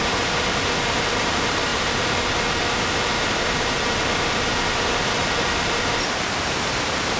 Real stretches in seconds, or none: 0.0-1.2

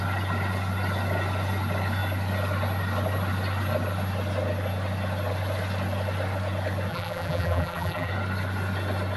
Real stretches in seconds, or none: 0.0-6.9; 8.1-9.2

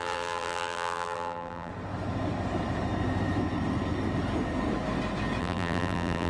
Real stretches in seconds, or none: 1.7-5.4

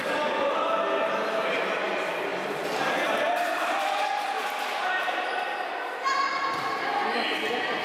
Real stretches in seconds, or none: 0.0-7.8

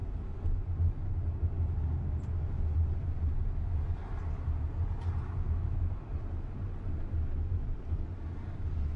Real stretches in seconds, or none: 0.0-6.1; 6.9-9.0

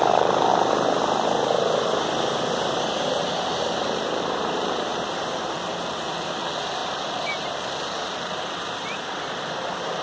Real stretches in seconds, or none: 0.5-2.5

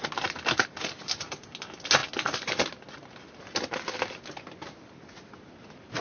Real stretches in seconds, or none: 0.0-6.0